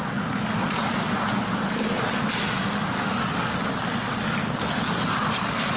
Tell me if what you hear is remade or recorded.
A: recorded